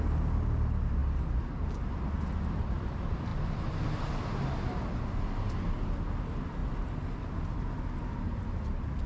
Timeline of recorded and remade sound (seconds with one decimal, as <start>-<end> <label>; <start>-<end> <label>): 0.0-9.1 recorded